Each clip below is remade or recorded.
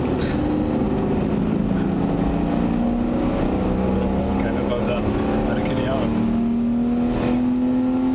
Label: recorded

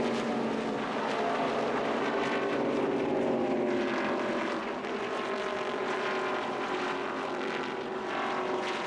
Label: remade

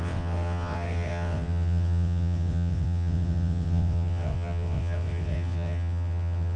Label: remade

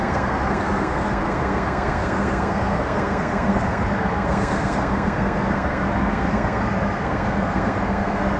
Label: remade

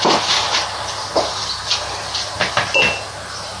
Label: recorded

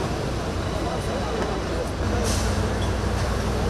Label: recorded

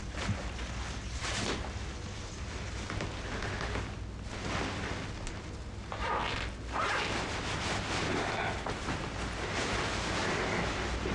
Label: recorded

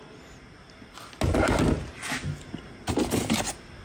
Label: recorded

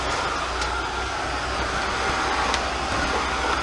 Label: recorded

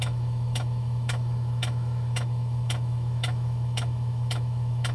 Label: remade